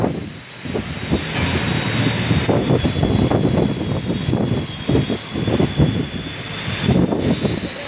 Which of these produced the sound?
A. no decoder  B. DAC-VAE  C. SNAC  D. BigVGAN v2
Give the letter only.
A